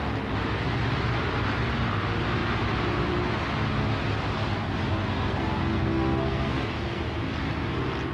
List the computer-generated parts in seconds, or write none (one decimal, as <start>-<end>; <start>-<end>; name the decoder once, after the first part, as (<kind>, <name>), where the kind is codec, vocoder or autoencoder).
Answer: 4.9-7.0 (codec, SNAC)